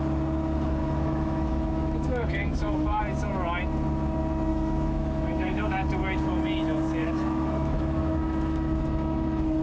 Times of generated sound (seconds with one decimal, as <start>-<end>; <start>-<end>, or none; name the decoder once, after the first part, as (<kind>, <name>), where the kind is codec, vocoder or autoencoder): 0.8-3.0 (autoencoder, DAC-VAE); 4.5-5.9; 7.0-9.6